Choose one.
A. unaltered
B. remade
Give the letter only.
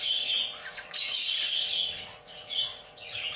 B